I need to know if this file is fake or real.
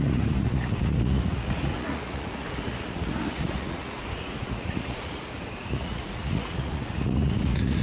fake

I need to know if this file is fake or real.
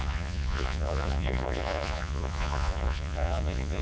fake